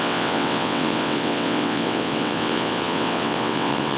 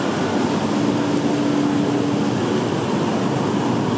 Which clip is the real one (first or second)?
second